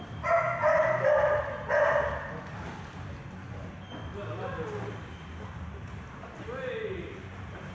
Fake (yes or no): no